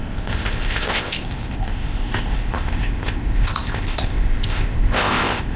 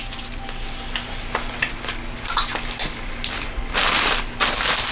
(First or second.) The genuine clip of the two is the second